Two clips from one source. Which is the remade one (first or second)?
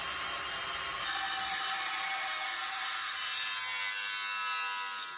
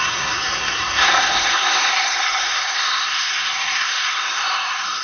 second